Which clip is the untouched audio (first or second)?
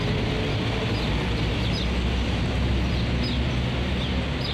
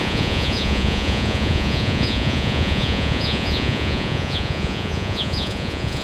first